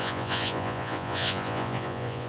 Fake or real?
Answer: fake